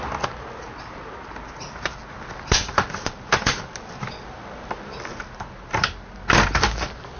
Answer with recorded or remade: recorded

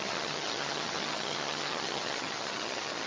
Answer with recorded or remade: remade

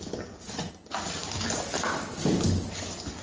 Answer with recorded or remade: recorded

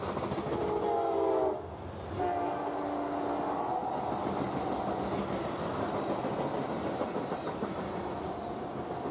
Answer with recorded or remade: recorded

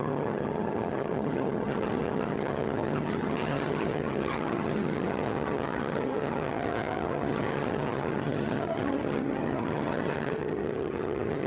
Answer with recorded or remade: remade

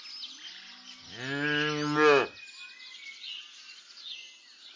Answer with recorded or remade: recorded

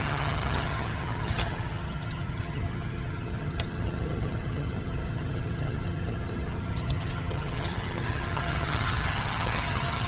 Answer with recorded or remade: remade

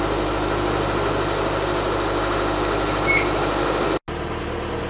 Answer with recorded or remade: recorded